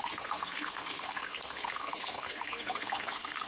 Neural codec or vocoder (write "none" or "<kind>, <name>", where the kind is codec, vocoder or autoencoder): codec, SNAC